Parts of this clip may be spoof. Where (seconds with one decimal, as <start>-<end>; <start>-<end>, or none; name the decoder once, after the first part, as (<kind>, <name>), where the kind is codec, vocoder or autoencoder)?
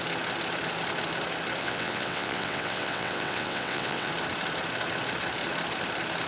1.6-4.1 (vocoder, WaveNeXt)